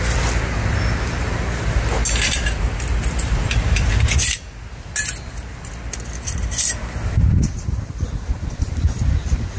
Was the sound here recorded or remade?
recorded